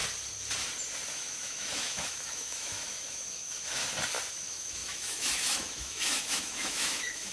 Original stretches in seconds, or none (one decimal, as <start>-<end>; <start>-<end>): 0.0-1.1; 3.8-4.3